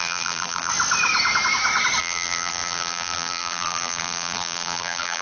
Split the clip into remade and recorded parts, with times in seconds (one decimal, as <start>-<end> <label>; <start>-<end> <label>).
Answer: 0.0-0.7 remade; 0.7-2.0 recorded; 2.0-5.2 remade